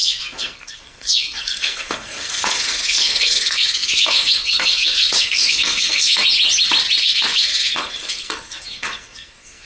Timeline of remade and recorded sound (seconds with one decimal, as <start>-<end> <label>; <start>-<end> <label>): 0.0-6.2 remade; 6.2-7.0 recorded; 7.0-9.7 remade